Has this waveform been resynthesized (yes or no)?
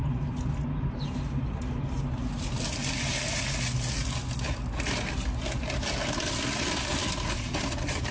no